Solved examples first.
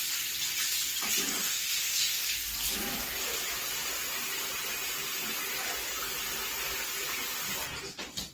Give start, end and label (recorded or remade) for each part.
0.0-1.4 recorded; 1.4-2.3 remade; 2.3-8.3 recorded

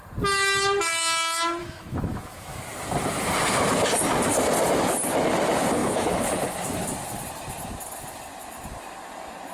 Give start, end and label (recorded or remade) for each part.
0.0-1.6 recorded; 1.6-2.6 remade; 2.6-9.5 recorded